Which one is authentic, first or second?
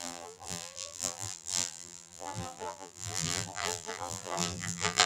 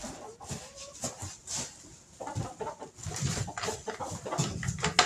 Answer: second